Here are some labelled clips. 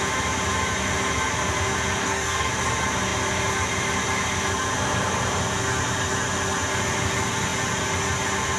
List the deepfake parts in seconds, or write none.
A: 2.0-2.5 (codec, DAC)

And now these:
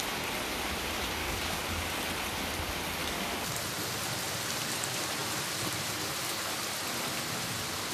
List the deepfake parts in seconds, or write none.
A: 1.2-1.8 (codec, DAC); 3.0-3.6

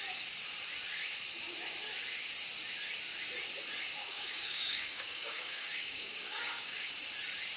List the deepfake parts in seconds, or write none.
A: 4.0-6.9 (codec, DAC)

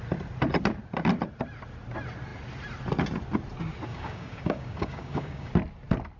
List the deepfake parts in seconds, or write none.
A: 3.9-5.5 (codec, DAC)

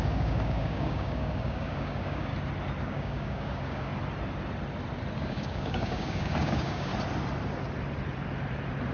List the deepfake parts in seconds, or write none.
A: 0.0-2.3 (codec, DAC); 2.8-3.9; 5.2-6.9

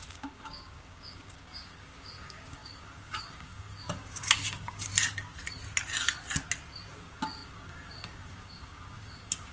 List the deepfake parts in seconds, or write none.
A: 0.0-4.9 (codec, DAC); 6.9-9.5

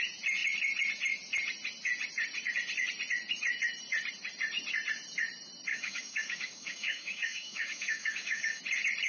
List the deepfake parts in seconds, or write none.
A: 5.7-8.6 (codec, DAC)

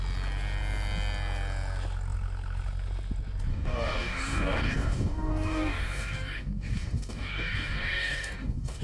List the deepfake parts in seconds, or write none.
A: 3.5-8.8 (codec, DAC)